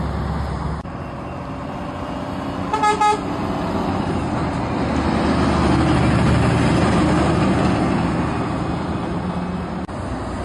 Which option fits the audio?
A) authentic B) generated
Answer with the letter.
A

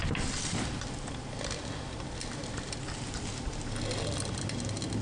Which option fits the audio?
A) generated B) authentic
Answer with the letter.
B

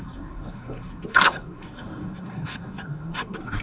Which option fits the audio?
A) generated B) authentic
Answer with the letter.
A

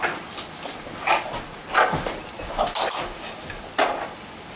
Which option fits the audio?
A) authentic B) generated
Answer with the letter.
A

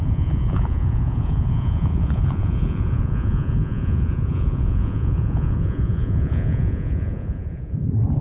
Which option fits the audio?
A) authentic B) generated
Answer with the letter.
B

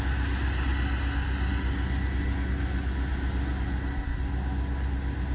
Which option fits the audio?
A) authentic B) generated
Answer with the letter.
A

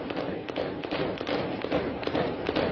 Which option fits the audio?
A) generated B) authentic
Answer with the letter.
B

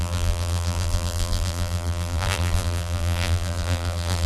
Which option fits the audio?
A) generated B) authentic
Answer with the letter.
A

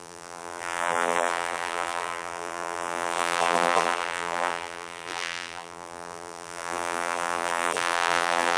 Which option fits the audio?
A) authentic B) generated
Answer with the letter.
B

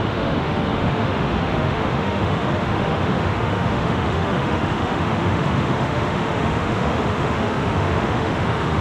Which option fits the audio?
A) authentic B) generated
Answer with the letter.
B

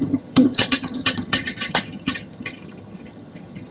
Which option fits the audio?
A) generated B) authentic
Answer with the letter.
A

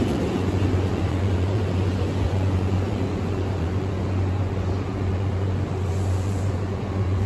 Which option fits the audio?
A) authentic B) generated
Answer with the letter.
B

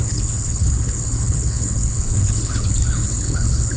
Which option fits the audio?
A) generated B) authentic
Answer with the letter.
A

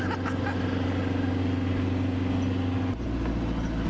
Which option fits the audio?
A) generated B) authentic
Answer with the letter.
B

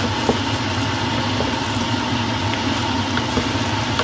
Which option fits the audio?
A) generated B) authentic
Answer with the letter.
B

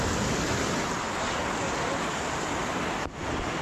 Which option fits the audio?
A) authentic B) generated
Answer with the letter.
A